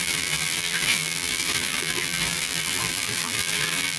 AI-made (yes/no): yes